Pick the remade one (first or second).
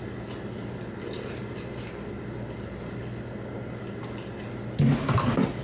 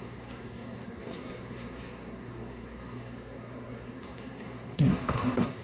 second